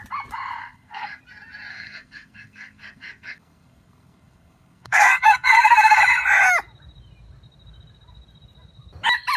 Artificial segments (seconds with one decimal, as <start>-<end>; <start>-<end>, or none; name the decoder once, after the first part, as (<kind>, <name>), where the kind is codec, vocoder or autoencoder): 0.6-1.2 (codec, SNAC); 1.7-6.0